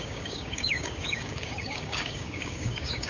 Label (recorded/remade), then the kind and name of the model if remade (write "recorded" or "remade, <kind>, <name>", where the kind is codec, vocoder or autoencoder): remade, codec, DAC